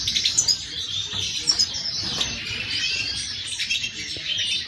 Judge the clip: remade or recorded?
recorded